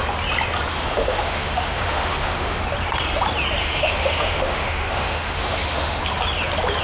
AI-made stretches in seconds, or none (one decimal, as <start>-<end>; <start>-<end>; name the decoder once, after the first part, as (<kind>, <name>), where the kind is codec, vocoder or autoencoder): 0.7-2.6 (autoencoder, DAC-VAE); 3.6-6.0